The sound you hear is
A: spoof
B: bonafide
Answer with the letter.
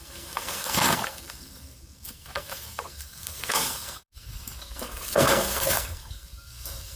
A